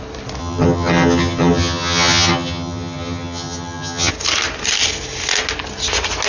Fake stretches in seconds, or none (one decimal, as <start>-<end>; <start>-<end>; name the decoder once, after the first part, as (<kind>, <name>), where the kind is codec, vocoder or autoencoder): 0.4-4.1 (vocoder, HiFi-GAN)